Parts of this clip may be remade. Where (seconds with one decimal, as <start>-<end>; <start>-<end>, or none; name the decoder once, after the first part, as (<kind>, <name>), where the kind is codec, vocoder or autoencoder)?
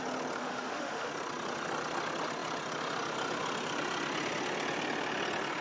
0.4-1.1 (autoencoder, DAC-VAE)